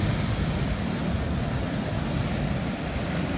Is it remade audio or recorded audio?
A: recorded